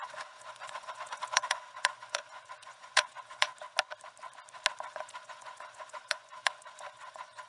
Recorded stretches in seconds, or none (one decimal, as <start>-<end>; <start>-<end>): 3.5-4.9